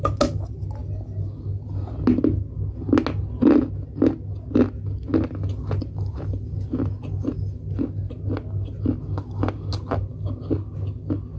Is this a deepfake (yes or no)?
no